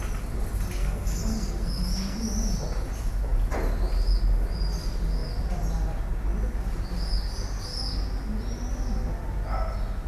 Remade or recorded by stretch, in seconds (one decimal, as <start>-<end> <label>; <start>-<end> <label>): 0.0-0.8 recorded; 0.8-2.2 remade; 2.2-10.1 recorded